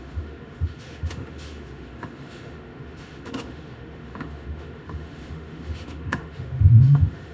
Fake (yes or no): yes